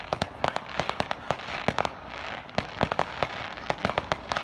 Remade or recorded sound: remade